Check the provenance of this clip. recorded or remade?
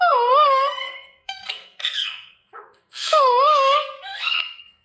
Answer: remade